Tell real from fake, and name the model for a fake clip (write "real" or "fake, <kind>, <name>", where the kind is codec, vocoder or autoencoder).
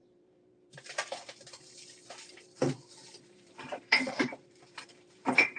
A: fake, vocoder, BigVGAN v2